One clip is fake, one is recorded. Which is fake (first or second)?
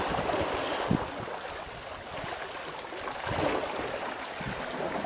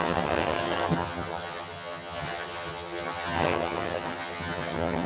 second